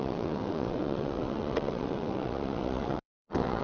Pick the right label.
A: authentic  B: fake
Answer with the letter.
B